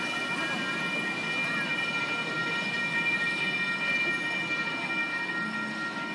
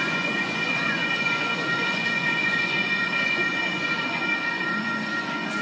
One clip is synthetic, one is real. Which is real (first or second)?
first